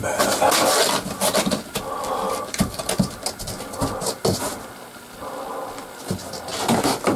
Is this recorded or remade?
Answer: recorded